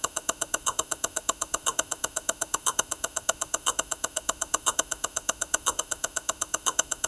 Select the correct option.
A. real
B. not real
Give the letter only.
B